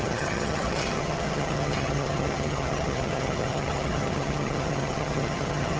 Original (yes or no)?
no